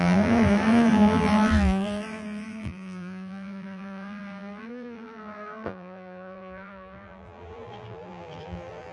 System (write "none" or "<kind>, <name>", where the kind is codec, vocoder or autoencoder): vocoder, BigVGAN v2